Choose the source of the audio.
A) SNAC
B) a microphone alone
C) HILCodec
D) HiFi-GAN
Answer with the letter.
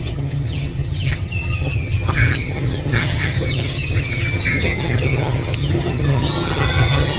D